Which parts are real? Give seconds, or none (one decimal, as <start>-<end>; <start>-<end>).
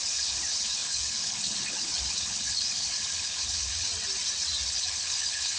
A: 3.9-4.7